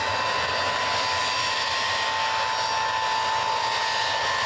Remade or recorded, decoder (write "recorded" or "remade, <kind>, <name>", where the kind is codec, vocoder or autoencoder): recorded